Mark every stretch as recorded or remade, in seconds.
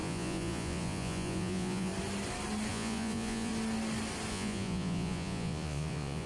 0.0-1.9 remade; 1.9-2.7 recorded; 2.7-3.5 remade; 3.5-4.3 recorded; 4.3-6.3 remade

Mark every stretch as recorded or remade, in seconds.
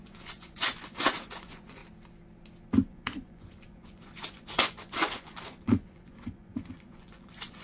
0.0-1.8 remade; 1.8-2.9 recorded; 2.9-7.6 remade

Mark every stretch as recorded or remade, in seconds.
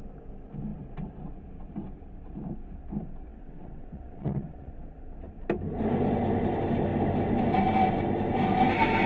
0.0-3.3 recorded; 3.3-4.7 remade; 4.7-9.1 recorded